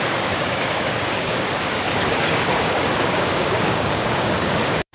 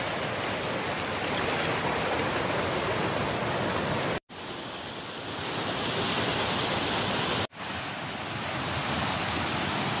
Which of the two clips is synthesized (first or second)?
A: first